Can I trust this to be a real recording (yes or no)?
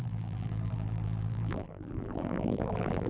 no